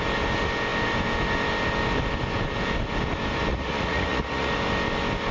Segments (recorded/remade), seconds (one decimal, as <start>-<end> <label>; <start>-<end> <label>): 0.0-3.5 recorded; 3.5-4.5 remade; 4.5-5.3 recorded